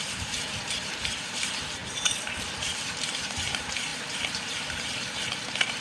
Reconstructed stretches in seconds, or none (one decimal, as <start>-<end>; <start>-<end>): 0.0-5.8